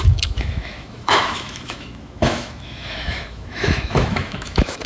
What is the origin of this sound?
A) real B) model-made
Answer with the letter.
B